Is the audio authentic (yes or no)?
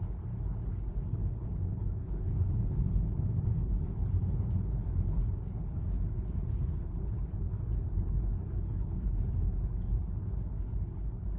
no